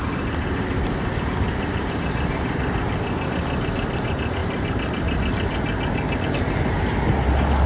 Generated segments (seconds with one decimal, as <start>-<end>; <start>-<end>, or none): 4.4-6.2